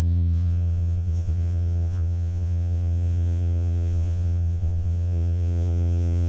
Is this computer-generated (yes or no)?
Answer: yes